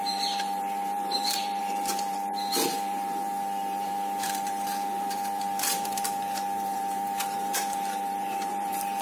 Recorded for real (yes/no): no